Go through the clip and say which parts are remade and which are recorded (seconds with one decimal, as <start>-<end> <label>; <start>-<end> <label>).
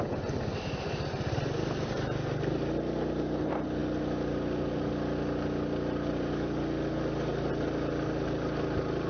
0.0-9.1 recorded